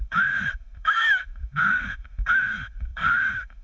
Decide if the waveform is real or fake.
fake